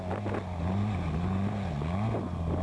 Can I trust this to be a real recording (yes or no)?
yes